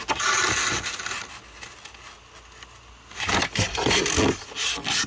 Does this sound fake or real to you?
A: real